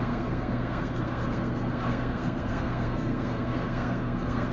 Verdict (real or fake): fake